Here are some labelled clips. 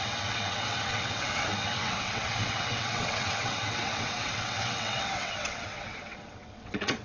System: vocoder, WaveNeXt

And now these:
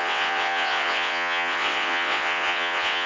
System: vocoder, WaveNeXt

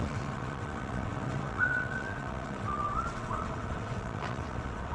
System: vocoder, WaveNeXt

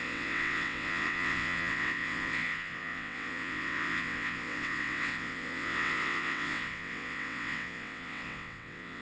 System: vocoder, WaveNeXt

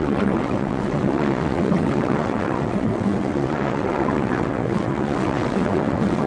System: vocoder, WaveNeXt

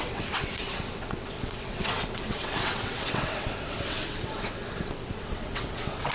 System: vocoder, WaveNeXt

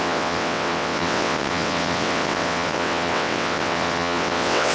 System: vocoder, WaveNeXt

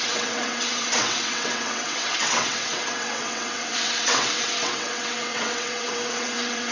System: vocoder, WaveNeXt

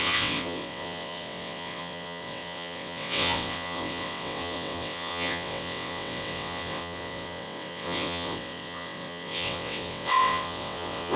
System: vocoder, WaveNeXt